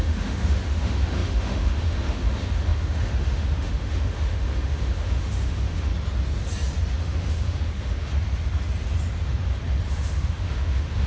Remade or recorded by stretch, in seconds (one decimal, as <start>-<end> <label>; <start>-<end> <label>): 0.0-5.9 remade; 5.9-7.0 recorded; 7.0-8.1 remade; 8.1-9.9 recorded; 9.9-11.1 remade